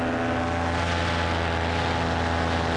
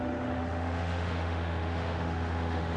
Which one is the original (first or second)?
first